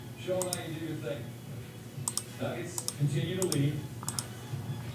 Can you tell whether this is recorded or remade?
recorded